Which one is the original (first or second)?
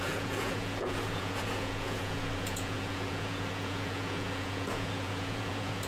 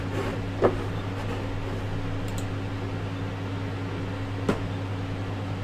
second